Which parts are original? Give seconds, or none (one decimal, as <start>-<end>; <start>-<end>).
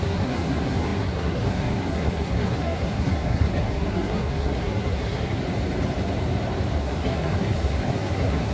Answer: 5.4-6.8